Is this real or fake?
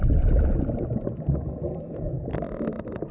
real